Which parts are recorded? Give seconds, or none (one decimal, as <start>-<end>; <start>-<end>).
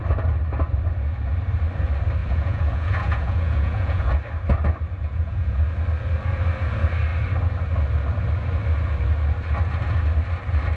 0.0-2.2; 4.1-5.0; 5.6-10.8